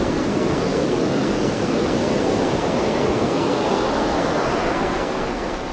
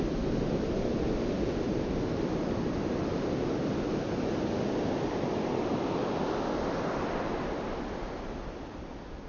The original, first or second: second